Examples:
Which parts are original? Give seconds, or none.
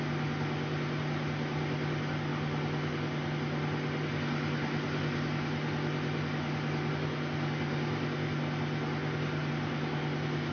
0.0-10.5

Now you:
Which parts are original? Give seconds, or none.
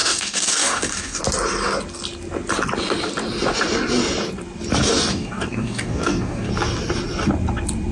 1.2-5.1; 6.5-7.9